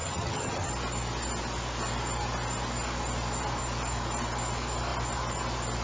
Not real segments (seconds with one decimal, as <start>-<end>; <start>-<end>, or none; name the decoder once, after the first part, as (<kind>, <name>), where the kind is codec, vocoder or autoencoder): 0.0-0.7 (vocoder, HiFi-GAN)